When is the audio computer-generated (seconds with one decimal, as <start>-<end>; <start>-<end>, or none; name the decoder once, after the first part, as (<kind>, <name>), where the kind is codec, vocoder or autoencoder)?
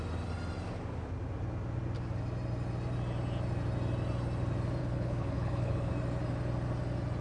4.8-5.9 (codec, HILCodec)